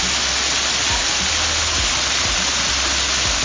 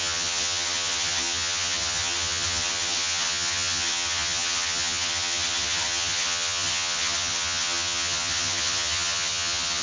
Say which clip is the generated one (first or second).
second